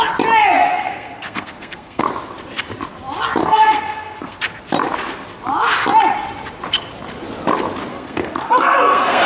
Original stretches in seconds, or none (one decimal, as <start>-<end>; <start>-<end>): 0.0-0.6; 2.0-3.4; 4.4-7.9

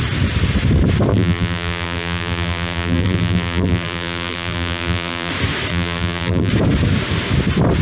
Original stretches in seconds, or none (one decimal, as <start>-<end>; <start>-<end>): 0.0-1.1; 5.3-5.7; 6.5-7.8

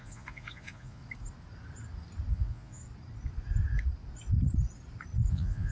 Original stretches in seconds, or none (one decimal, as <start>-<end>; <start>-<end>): 1.0-2.3; 2.8-5.3

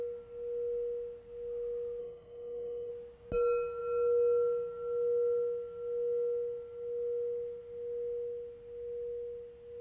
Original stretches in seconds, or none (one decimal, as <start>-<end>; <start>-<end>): 0.0-2.0; 2.9-9.8

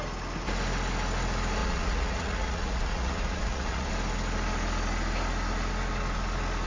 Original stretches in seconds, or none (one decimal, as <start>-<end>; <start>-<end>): 0.0-1.6; 3.9-6.7

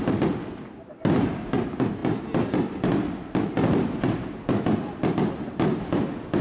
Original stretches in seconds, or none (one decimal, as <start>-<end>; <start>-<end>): 0.0-6.4

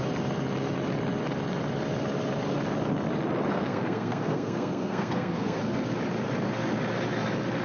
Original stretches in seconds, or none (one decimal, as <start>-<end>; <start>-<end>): 0.0-3.5; 5.6-7.6

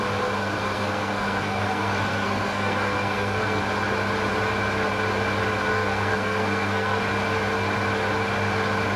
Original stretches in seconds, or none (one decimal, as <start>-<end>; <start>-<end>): 0.0-0.4; 3.6-5.7; 7.0-9.0